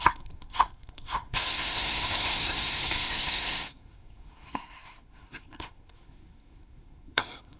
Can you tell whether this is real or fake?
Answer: fake